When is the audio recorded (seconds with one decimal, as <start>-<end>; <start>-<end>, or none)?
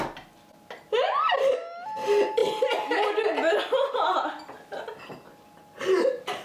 0.0-6.4